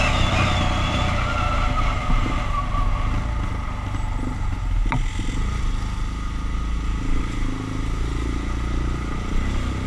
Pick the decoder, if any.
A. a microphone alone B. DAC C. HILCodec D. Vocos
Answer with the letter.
A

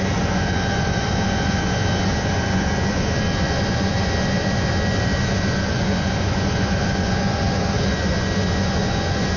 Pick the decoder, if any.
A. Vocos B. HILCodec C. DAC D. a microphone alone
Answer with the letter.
A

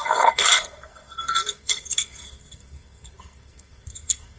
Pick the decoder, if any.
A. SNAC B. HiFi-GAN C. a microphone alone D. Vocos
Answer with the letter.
A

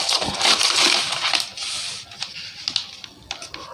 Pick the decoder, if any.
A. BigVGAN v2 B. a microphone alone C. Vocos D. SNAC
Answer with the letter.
B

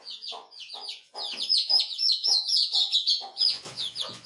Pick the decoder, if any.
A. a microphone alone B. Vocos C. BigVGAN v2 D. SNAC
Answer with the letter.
B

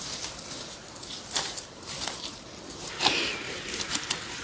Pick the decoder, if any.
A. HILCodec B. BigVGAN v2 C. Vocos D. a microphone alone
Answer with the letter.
D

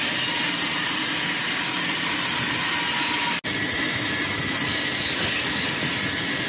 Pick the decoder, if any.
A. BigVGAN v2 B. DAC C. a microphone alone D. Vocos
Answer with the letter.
C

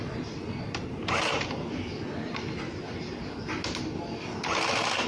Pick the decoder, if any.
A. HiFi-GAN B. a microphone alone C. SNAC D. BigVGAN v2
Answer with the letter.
B